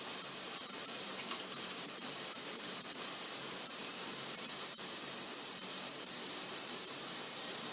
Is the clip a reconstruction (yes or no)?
yes